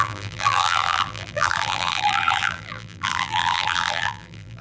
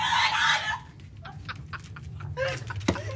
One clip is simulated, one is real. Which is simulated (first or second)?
first